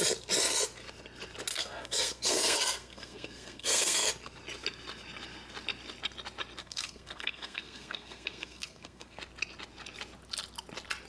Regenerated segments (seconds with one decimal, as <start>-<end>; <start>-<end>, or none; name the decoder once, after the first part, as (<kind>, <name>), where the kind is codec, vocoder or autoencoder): 1.5-4.1 (codec, SNAC); 6.6-9.2